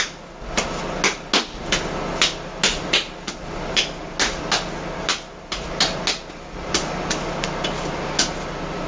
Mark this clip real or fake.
real